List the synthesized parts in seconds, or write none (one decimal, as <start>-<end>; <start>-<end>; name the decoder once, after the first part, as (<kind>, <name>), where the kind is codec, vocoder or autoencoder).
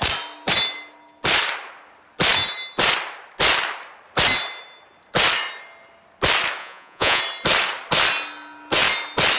6.6-7.2 (vocoder, Vocos)